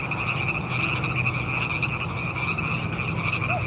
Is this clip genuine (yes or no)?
yes